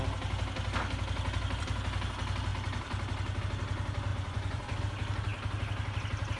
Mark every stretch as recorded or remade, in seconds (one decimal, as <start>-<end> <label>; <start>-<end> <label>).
0.0-4.1 recorded; 4.1-4.8 remade; 4.8-6.4 recorded